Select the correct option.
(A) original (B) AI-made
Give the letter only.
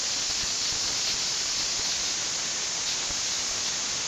A